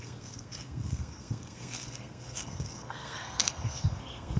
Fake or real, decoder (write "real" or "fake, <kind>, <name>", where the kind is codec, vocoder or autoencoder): fake, codec, SNAC